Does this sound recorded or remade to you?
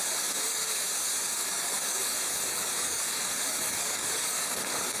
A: remade